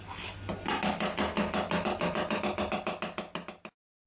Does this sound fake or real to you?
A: real